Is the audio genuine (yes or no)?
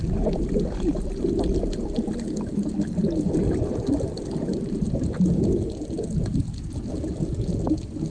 yes